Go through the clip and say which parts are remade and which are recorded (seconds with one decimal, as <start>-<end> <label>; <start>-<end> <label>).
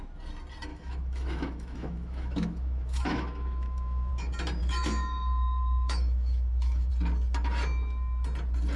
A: 0.0-0.7 recorded; 0.7-4.1 remade; 4.1-4.6 recorded; 4.6-6.9 remade; 6.9-8.8 recorded